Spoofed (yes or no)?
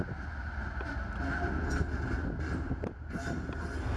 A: no